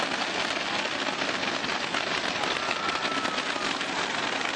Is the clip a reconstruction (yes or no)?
no